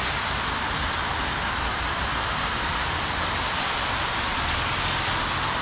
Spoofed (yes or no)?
yes